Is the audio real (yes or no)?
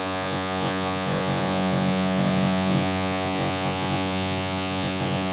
no